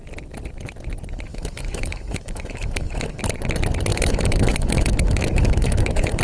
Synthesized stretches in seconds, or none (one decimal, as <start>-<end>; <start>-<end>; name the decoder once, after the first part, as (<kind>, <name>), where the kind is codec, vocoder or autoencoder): 1.3-3.2 (autoencoder, DAC-VAE); 3.9-6.2